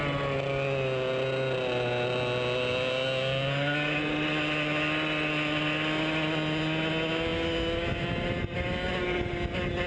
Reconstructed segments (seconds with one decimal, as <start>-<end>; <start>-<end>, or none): none